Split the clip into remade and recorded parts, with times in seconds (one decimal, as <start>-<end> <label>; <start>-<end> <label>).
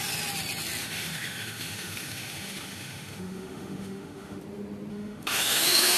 0.0-0.8 recorded; 0.8-4.4 remade; 4.4-4.9 recorded; 4.9-6.0 remade